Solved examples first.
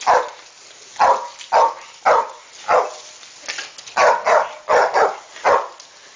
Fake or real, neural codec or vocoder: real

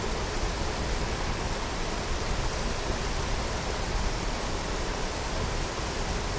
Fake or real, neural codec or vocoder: real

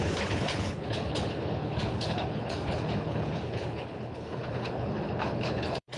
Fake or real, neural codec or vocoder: fake, codec, HILCodec